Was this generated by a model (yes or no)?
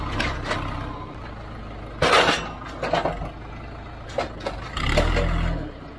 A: no